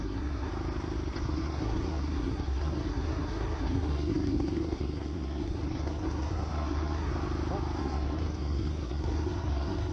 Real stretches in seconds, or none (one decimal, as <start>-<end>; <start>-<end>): 0.5-1.2; 7.1-7.8